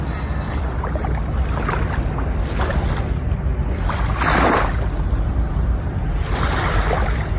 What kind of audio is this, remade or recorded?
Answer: recorded